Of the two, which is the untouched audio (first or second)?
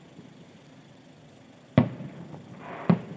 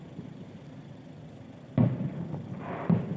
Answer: first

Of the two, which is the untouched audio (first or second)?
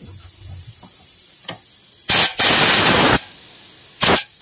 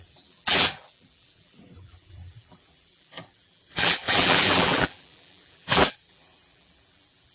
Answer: first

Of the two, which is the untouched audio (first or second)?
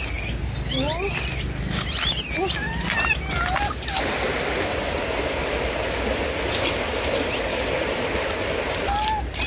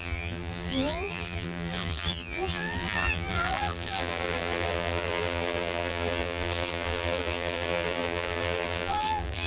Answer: first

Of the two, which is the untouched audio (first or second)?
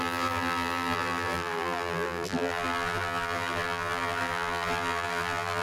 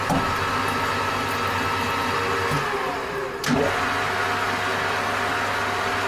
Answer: second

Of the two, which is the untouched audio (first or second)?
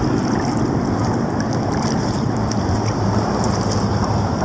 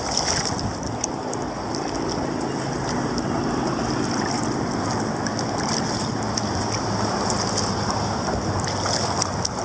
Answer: second